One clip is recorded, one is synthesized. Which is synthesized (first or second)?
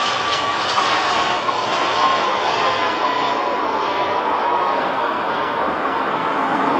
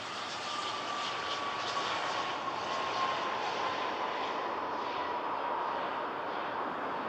first